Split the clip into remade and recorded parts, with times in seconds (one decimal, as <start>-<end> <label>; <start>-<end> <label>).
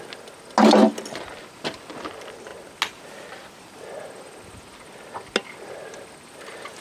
0.0-6.8 recorded